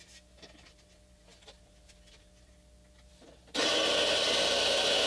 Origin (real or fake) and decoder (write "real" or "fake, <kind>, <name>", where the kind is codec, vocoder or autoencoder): real